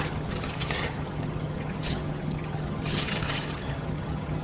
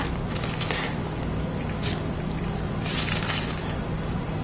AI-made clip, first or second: first